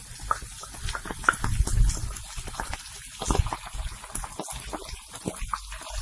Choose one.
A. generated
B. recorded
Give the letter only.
B